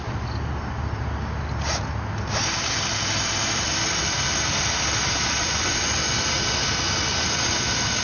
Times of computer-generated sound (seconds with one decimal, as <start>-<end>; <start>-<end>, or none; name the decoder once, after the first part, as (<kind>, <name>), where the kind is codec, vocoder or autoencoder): 5.4-6.2 (vocoder, Vocos)